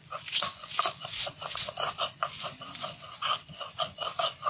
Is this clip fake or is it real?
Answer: fake